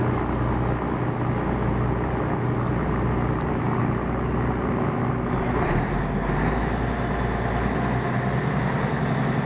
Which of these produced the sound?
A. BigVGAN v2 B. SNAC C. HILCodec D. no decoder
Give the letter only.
D